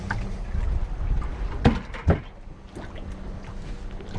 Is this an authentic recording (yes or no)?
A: yes